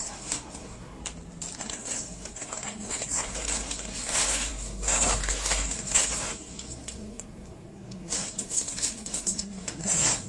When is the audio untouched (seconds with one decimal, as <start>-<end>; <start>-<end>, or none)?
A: 1.0-1.6